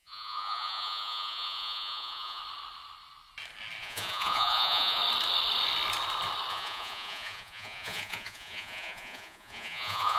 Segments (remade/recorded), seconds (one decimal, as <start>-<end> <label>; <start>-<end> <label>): 0.0-2.4 remade; 2.4-3.8 recorded; 3.8-5.0 remade; 5.0-6.5 recorded; 6.5-10.2 remade